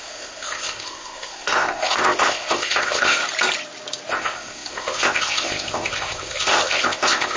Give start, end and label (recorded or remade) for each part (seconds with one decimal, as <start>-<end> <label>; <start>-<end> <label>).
0.0-3.2 remade; 3.2-4.1 recorded; 4.1-7.4 remade